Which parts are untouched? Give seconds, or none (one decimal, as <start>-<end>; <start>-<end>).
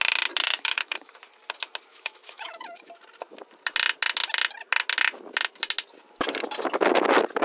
0.0-0.4; 1.1-1.9; 2.9-7.4